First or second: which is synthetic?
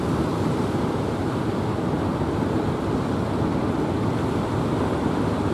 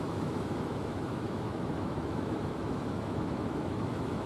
second